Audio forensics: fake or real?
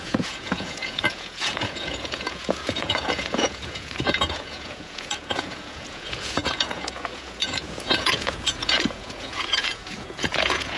fake